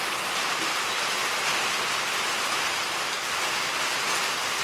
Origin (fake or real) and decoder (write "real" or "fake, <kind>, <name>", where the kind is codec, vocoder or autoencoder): real